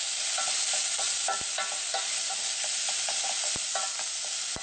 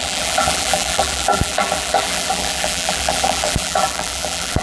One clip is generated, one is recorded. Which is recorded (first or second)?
first